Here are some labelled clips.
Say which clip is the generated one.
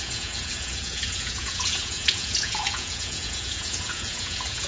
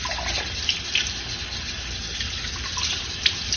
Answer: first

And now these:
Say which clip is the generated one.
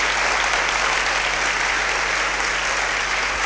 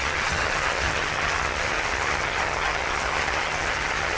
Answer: second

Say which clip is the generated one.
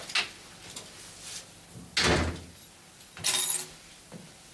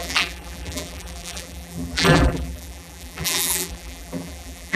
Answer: second